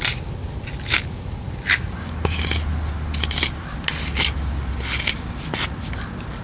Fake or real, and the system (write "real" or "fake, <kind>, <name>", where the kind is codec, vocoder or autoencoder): real